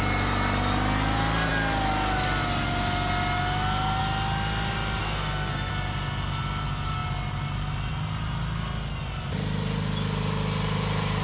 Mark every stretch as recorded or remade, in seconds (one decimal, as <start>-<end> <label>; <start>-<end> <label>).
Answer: 0.0-5.0 recorded; 5.0-5.7 remade; 5.7-11.2 recorded